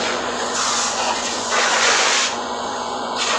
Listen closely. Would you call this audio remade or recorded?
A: remade